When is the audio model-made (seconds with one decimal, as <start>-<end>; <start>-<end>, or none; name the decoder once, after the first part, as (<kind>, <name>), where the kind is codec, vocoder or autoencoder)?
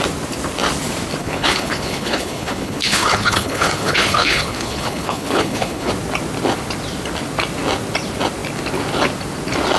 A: 1.2-5.9 (codec, HILCodec)